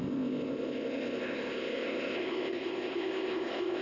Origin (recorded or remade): remade